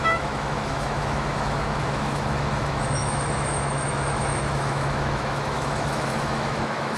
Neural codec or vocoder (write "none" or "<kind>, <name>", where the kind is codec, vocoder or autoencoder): autoencoder, DAC-VAE